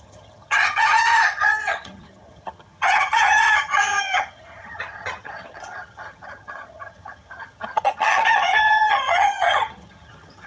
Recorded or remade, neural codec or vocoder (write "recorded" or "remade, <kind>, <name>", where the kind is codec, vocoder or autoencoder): remade, vocoder, HiFi-GAN